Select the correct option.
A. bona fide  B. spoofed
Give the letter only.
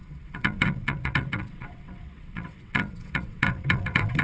B